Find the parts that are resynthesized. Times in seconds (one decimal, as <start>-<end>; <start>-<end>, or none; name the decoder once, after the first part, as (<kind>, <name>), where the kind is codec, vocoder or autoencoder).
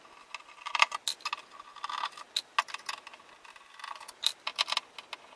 none